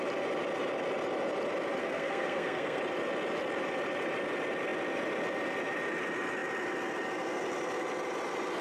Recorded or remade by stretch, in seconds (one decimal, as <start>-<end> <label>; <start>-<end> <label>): 0.0-1.8 recorded; 1.8-2.8 remade; 2.8-8.6 recorded